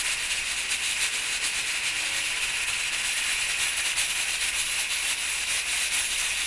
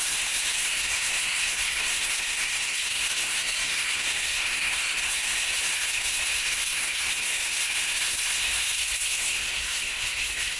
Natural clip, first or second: first